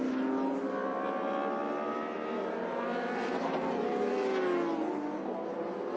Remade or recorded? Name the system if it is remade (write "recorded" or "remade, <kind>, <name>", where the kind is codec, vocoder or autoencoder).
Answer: recorded